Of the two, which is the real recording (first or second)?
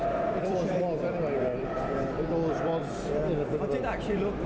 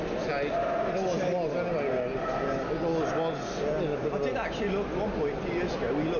second